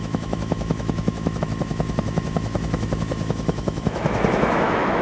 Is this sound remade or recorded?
remade